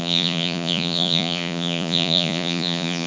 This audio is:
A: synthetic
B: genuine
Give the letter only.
A